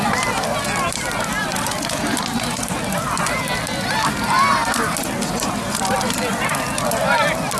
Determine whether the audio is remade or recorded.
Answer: recorded